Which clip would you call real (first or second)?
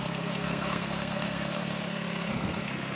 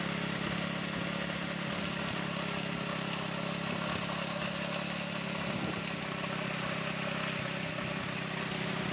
second